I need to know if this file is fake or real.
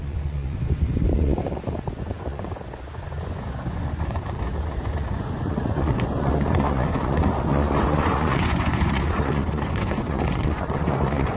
fake